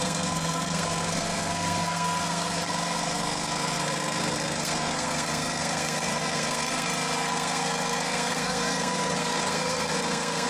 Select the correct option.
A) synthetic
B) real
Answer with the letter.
A